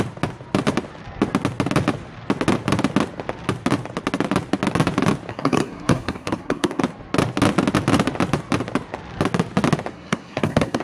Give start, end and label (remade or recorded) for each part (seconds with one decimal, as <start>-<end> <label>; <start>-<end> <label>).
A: 0.0-5.3 recorded; 5.3-6.8 remade; 6.8-9.9 recorded; 9.9-10.8 remade